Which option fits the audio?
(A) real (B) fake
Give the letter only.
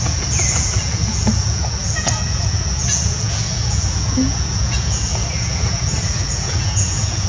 B